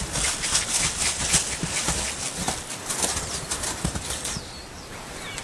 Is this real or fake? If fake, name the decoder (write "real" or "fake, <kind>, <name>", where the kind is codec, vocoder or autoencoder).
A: real